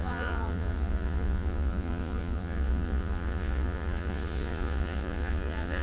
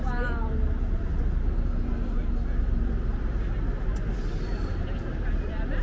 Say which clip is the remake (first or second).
first